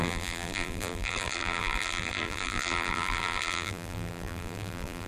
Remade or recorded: remade